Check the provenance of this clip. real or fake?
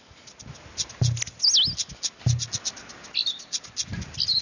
real